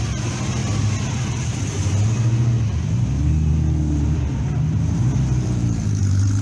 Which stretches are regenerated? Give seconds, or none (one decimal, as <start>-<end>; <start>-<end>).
none